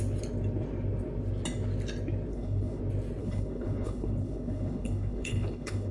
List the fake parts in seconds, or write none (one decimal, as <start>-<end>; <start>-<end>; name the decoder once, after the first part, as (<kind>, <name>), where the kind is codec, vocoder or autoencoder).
2.3-2.8 (codec, HILCodec); 3.2-5.9